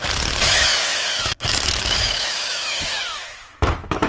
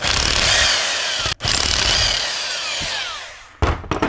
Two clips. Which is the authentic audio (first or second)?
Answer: second